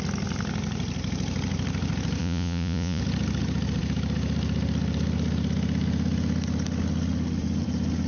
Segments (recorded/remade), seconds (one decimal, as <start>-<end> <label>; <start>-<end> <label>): 0.0-2.2 recorded; 2.2-3.0 remade; 3.0-8.1 recorded